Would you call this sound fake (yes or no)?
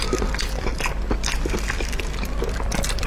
yes